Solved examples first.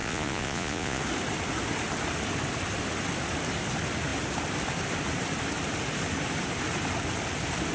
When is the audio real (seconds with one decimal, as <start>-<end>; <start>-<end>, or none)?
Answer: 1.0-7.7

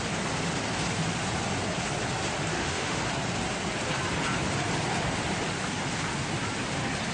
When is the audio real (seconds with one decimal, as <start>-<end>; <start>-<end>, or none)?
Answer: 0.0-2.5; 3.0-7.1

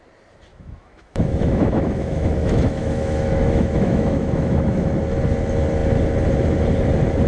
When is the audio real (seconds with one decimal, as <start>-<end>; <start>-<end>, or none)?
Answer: 0.0-0.5; 4.9-7.3